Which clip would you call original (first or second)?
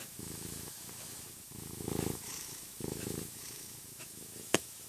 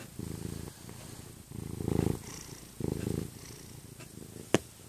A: second